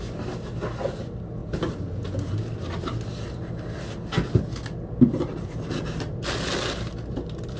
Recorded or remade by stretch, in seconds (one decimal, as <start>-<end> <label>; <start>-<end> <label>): 0.0-7.6 recorded